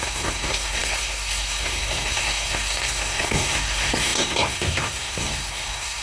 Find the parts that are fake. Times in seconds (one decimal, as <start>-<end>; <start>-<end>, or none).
0.0-6.0